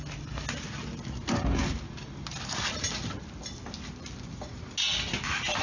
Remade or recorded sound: recorded